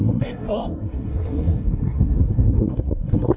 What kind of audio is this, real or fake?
fake